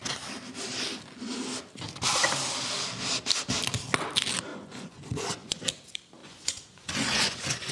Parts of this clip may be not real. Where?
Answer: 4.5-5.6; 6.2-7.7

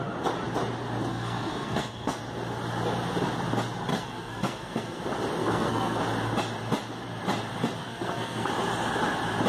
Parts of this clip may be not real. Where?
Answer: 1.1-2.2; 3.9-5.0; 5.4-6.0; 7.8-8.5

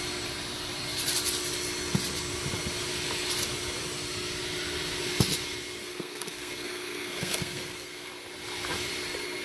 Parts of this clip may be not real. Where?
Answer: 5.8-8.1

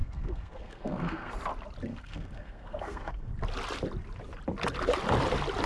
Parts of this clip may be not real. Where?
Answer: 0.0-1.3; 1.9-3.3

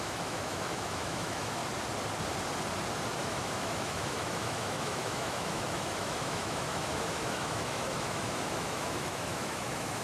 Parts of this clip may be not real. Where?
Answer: 0.0-1.6; 3.2-10.0